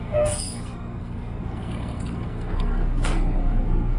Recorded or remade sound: remade